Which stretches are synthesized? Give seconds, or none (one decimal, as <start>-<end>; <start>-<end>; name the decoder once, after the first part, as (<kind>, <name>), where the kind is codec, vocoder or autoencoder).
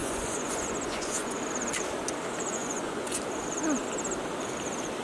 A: 0.0-1.4 (vocoder, Vocos); 2.5-3.2